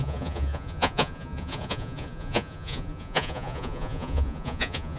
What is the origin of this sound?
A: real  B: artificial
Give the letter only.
B